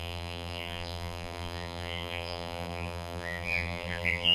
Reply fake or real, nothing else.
fake